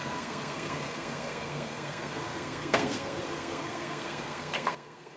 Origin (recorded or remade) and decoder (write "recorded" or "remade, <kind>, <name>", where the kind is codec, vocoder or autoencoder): remade, codec, SNAC